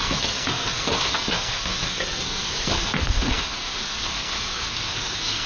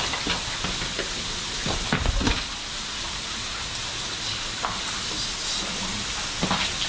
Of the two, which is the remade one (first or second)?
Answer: first